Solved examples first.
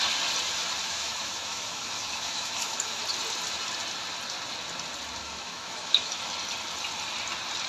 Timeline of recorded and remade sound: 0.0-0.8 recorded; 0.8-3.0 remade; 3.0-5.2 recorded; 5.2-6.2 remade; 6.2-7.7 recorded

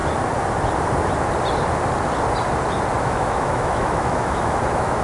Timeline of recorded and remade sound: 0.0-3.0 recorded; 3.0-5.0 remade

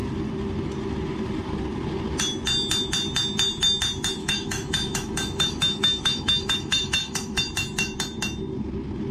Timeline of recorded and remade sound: 0.0-4.2 recorded; 4.2-7.4 remade; 7.4-9.1 recorded

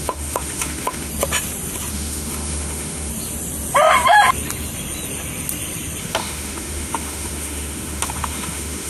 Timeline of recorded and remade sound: 0.0-1.1 remade; 1.1-1.9 recorded; 1.9-3.1 remade; 3.1-6.0 recorded; 6.0-8.9 remade

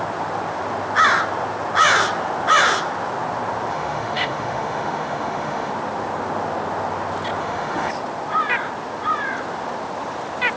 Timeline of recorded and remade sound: 0.0-3.7 recorded; 3.7-5.7 remade; 5.7-7.4 recorded; 7.4-7.9 remade; 7.9-10.6 recorded

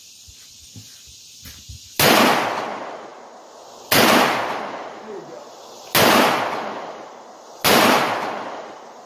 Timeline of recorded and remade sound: 0.0-9.1 recorded

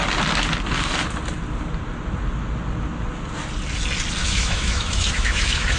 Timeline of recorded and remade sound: 0.0-4.2 recorded; 4.2-5.8 remade